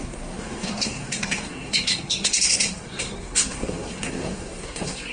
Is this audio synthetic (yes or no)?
yes